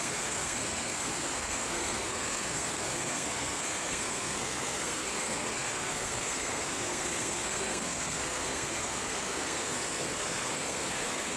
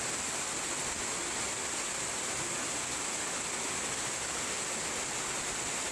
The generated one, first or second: first